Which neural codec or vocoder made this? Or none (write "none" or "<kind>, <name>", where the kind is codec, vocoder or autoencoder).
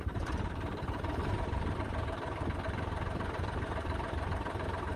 vocoder, BigVGAN v2